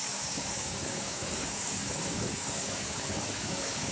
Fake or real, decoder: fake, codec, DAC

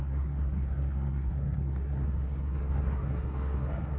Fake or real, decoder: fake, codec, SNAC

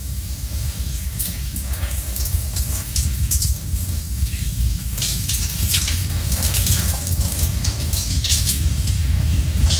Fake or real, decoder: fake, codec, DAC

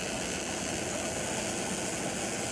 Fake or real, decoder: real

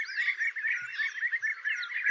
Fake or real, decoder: real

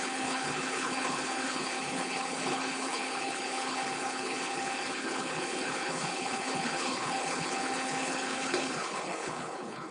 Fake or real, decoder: fake, codec, HILCodec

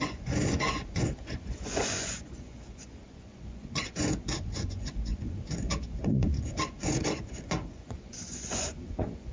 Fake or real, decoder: fake, vocoder, Vocos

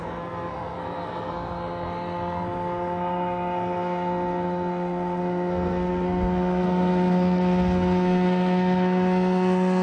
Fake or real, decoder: fake, codec, SNAC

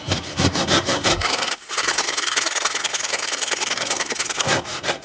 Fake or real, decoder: fake, codec, SNAC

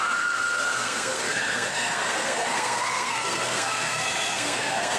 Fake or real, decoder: fake, codec, SNAC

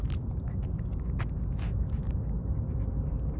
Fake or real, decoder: real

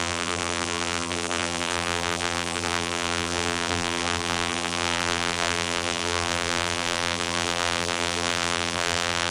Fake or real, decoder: fake, vocoder, BigVGAN v2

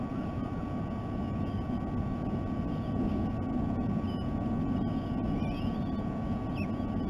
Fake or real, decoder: real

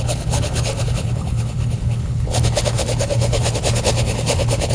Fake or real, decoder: fake, codec, HILCodec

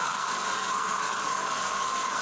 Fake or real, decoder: fake, codec, SNAC